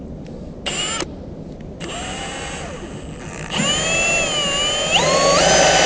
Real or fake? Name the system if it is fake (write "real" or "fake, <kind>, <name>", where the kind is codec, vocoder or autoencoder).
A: real